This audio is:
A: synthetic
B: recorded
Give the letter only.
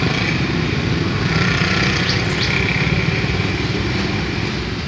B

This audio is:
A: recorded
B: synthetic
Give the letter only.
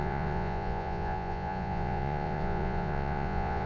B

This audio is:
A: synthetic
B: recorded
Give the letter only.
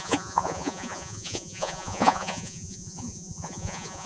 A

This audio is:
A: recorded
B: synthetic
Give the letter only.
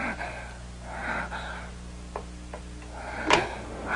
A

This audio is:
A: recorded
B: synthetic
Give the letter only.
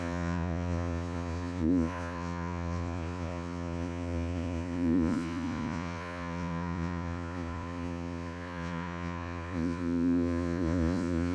B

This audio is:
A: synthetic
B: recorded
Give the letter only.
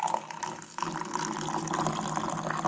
B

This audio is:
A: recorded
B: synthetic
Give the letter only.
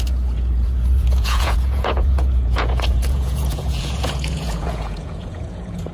B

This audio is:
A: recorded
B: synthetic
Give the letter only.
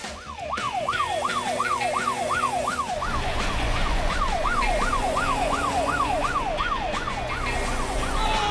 B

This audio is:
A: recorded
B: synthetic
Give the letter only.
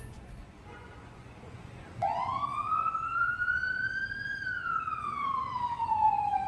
B